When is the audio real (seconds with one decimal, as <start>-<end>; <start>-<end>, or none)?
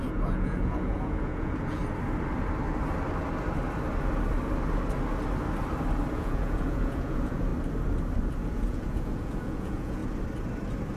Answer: 1.8-6.1; 7.5-8.4; 10.0-11.0